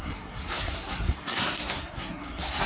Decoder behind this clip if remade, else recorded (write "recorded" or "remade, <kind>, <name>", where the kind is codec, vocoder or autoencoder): remade, codec, SNAC